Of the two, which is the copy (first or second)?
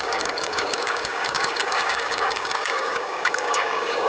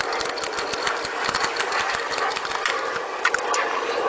first